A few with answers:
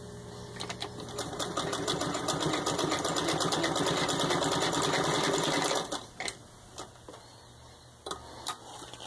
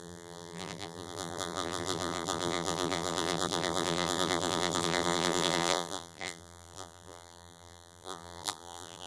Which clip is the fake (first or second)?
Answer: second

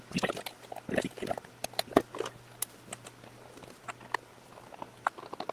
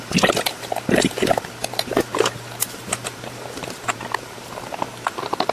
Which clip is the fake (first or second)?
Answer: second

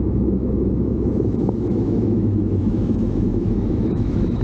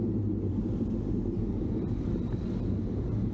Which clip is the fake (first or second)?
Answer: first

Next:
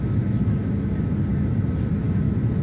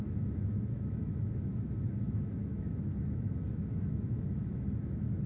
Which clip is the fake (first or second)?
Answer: second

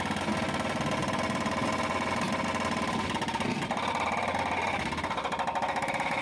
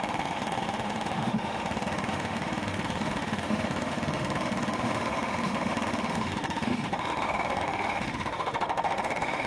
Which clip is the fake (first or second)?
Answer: second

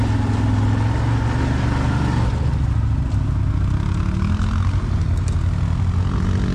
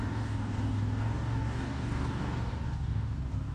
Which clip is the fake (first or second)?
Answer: second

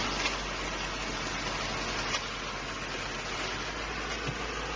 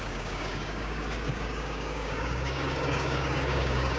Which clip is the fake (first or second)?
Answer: second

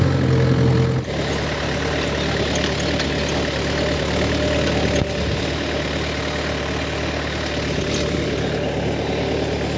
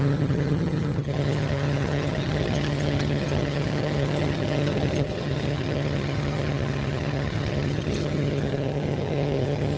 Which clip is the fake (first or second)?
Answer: second